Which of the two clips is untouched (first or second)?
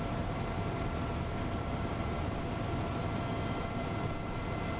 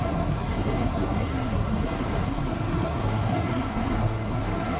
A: first